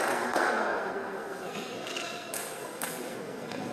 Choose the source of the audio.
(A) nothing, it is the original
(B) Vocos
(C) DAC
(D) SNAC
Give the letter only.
D